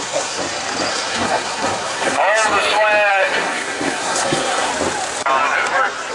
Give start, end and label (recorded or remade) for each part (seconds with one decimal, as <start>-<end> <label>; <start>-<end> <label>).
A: 0.0-0.4 remade; 0.4-0.9 recorded; 0.9-2.2 remade; 2.2-3.1 recorded; 3.1-4.7 remade; 4.7-6.1 recorded